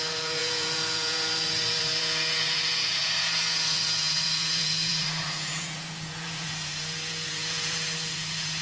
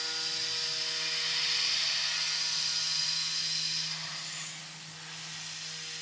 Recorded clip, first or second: second